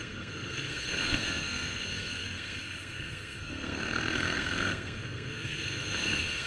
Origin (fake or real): fake